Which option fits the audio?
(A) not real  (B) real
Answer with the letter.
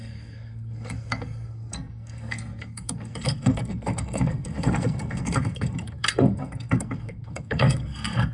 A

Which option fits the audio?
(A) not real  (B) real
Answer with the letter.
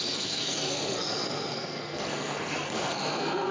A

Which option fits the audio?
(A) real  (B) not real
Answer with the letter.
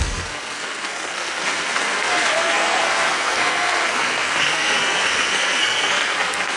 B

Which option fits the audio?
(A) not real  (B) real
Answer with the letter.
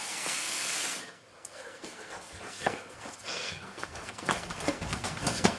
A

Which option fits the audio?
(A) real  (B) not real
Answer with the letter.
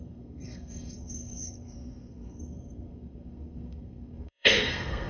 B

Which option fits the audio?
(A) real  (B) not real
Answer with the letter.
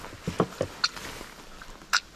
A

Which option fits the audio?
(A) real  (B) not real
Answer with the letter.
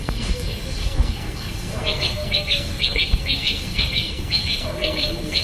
B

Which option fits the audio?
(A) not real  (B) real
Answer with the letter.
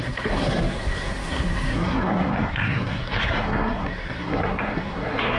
A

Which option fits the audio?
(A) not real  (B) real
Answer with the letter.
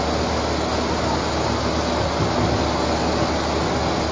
B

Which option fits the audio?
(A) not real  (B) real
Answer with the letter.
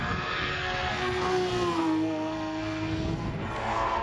A